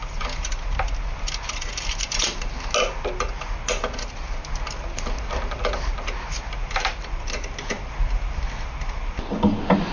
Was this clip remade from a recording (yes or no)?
no